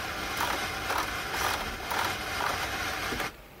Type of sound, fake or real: fake